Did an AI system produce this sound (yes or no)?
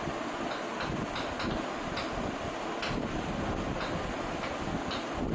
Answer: no